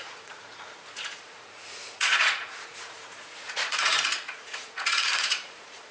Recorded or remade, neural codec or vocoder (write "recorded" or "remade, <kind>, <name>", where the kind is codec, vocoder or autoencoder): remade, vocoder, Vocos